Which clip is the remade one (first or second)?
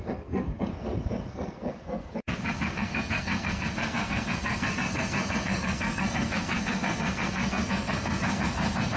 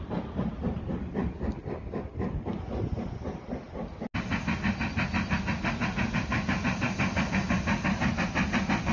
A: first